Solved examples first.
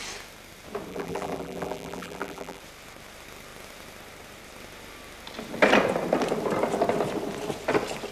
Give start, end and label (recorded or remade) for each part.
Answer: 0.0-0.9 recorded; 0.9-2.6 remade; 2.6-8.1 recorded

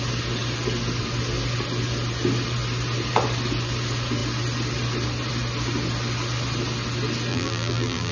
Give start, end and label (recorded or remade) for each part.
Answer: 0.0-7.3 recorded; 7.3-8.1 remade

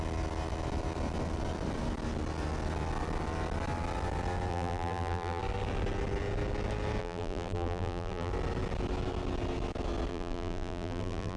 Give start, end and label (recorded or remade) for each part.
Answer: 0.0-4.5 recorded; 4.5-5.4 remade; 5.4-7.0 recorded; 7.0-8.3 remade; 8.3-10.1 recorded; 10.1-11.4 remade